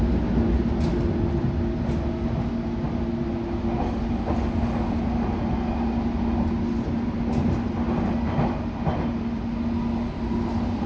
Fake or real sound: real